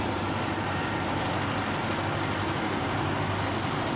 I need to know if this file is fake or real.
real